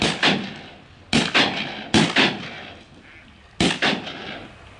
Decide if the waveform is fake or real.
real